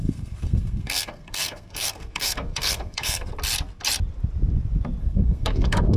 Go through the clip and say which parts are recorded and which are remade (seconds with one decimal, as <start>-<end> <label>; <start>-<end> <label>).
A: 0.0-3.3 remade; 3.3-5.0 recorded; 5.0-6.0 remade